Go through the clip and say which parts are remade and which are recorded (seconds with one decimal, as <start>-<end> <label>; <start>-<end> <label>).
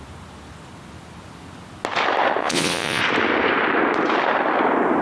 0.0-2.4 recorded; 2.4-3.0 remade; 3.0-5.0 recorded